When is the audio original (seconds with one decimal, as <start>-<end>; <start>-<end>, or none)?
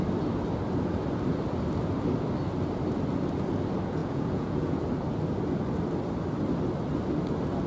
0.0-4.0; 4.8-7.7